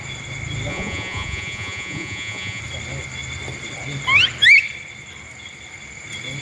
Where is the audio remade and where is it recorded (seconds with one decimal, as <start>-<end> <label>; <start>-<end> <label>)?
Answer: 0.0-0.7 recorded; 0.7-2.6 remade; 2.6-6.4 recorded